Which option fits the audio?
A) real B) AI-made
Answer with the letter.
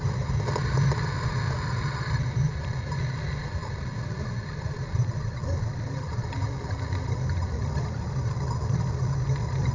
A